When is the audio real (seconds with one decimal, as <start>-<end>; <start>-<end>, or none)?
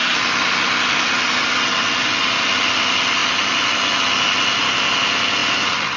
0.0-6.0